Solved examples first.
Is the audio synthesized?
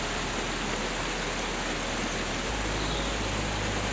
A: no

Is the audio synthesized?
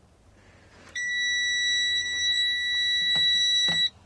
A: no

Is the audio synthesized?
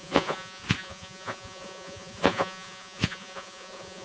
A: yes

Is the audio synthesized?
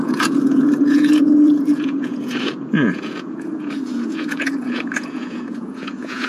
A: yes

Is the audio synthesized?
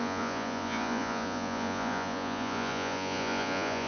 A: yes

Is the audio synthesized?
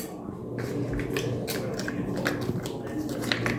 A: no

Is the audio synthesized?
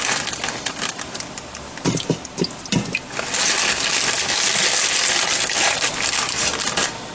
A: no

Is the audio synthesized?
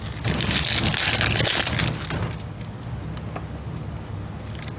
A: no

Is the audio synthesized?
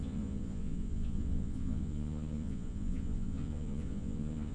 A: yes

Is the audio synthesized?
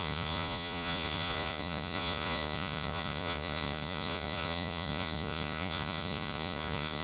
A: yes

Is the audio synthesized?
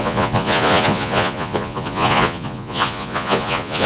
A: yes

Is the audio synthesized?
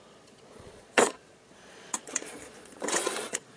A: yes